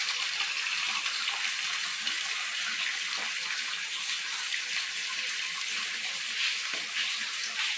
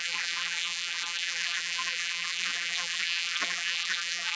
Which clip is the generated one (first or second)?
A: second